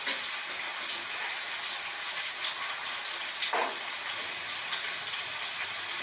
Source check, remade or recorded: recorded